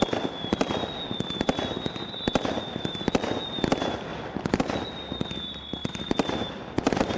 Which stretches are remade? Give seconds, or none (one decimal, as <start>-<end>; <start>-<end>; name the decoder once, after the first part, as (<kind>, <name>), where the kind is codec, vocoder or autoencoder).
none